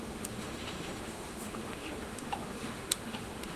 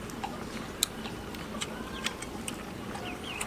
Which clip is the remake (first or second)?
first